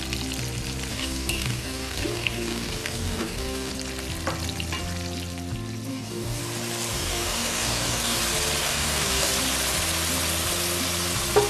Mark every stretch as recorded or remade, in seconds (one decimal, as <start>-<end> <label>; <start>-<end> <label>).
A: 0.0-0.9 recorded; 0.9-3.7 remade; 3.7-5.9 recorded; 5.9-6.4 remade; 6.4-6.9 recorded; 6.9-8.2 remade; 8.2-8.6 recorded; 8.6-9.3 remade; 9.3-11.5 recorded